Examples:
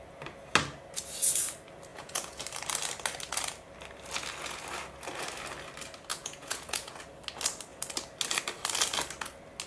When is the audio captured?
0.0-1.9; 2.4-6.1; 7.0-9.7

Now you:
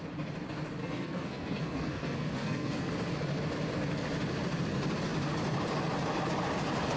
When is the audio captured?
0.0-0.8; 2.9-7.0

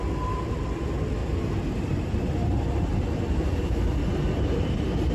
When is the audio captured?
0.0-1.2; 3.5-4.0

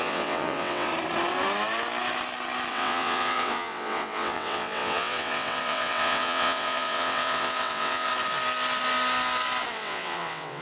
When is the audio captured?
0.9-2.7; 8.1-9.7

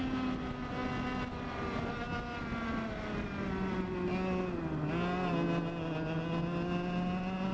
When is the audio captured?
0.0-7.5